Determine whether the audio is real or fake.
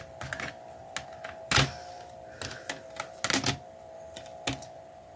real